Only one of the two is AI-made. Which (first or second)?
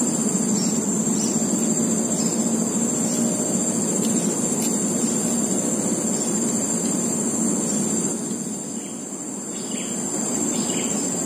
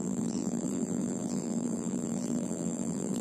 second